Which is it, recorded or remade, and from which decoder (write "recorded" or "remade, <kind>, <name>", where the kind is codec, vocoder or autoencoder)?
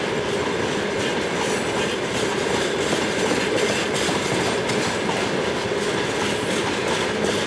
recorded